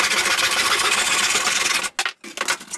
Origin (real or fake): real